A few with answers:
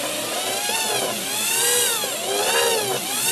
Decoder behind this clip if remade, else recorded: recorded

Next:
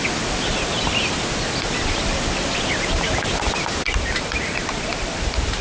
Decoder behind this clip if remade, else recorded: recorded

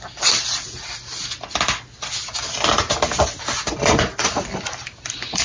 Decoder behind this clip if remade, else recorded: recorded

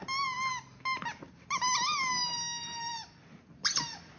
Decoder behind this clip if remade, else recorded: recorded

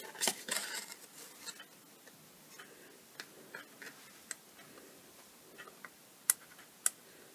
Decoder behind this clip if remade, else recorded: recorded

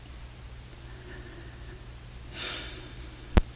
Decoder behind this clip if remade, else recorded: recorded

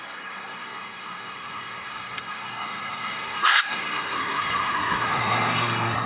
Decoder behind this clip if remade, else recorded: remade, codec, SNAC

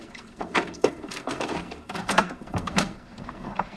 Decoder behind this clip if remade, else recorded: remade, codec, SNAC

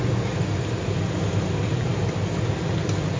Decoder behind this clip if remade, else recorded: recorded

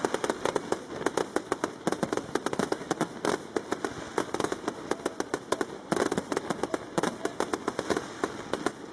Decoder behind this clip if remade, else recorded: recorded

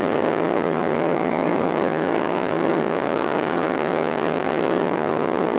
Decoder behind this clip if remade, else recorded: remade, vocoder, HiFi-GAN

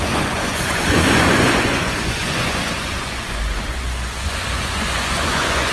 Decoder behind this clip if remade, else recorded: remade, vocoder, Vocos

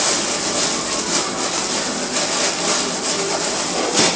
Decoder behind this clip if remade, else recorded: recorded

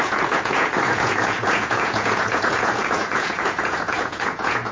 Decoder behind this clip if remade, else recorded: remade, vocoder, Vocos